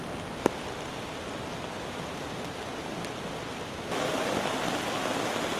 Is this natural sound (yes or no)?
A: yes